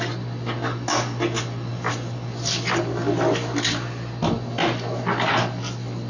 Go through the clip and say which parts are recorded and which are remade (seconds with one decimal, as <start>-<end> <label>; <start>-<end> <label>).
0.0-6.1 recorded